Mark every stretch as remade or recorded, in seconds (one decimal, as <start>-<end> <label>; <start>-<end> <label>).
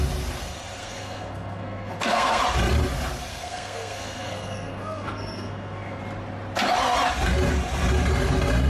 0.0-0.8 recorded; 0.8-2.4 remade; 2.4-3.3 recorded; 3.3-6.0 remade; 6.0-8.7 recorded